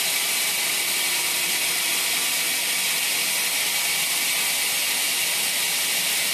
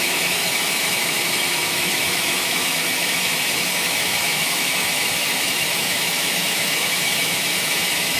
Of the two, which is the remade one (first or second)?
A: second